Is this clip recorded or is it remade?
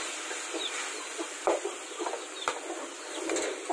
recorded